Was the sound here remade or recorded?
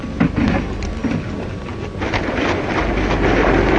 recorded